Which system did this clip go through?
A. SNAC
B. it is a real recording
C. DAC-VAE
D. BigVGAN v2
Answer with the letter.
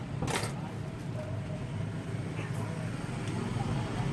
B